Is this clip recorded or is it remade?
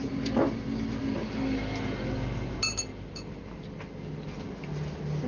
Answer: recorded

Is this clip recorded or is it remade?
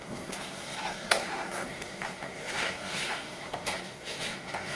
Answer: remade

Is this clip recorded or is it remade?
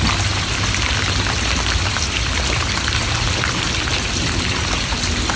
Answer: recorded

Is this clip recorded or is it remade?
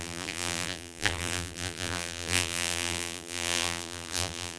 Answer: remade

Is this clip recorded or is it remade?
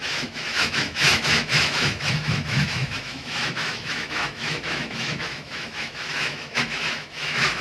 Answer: remade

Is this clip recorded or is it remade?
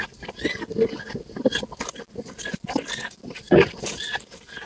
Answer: recorded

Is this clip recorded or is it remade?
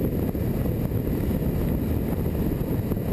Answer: recorded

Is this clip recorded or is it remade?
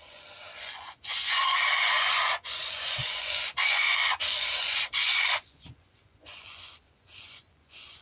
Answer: remade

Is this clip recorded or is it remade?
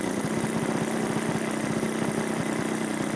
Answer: recorded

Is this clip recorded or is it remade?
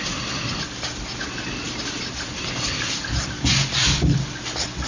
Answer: recorded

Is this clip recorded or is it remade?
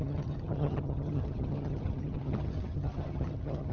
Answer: remade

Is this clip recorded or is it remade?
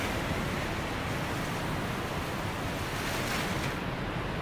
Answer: recorded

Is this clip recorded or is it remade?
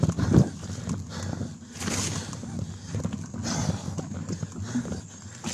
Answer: recorded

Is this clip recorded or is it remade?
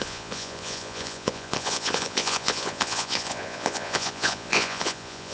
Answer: remade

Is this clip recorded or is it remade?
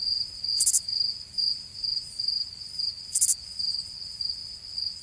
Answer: recorded